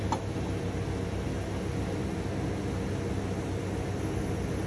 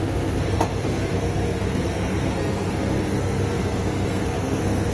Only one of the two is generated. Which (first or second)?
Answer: second